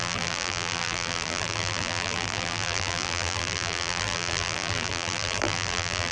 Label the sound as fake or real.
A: fake